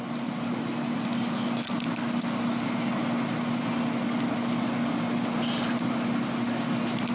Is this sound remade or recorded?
recorded